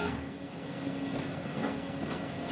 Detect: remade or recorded remade